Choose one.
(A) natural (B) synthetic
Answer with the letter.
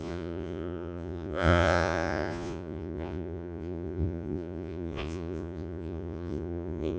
B